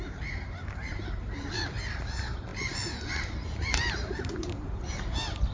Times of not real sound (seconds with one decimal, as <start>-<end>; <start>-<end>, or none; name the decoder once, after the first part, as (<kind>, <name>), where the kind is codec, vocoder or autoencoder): 0.0-5.5 (vocoder, BigVGAN v2)